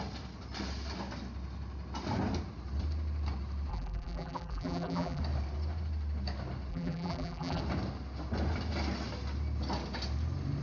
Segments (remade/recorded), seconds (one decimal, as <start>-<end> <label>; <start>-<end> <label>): 0.0-3.7 recorded; 3.7-5.2 remade; 5.2-6.7 recorded; 6.7-7.6 remade; 7.6-10.6 recorded